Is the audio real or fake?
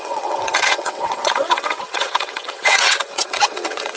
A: fake